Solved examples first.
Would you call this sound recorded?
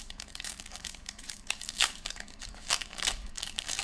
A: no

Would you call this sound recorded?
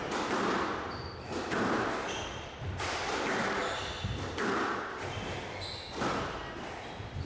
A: yes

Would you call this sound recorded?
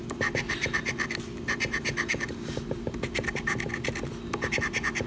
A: yes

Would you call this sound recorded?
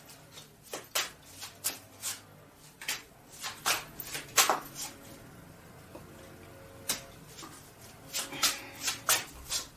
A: yes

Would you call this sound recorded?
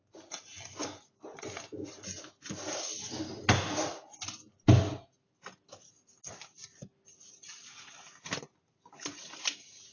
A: yes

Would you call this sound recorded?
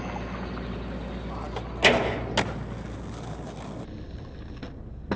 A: yes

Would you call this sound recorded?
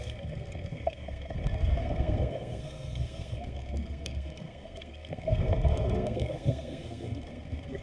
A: no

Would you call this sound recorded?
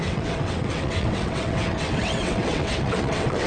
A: no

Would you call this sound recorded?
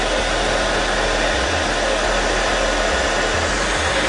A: yes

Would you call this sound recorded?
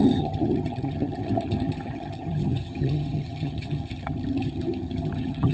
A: no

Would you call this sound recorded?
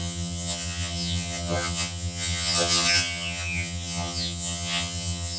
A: no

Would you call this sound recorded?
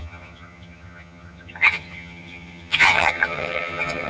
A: no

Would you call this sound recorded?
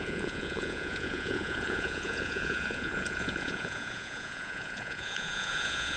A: no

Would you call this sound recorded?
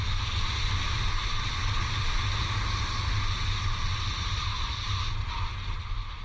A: yes